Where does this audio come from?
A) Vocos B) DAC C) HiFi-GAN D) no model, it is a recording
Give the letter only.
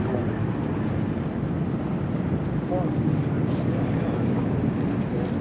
D